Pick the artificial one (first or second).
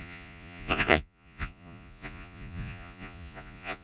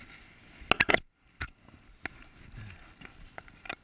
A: first